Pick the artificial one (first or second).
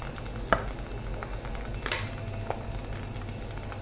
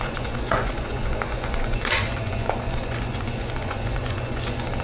second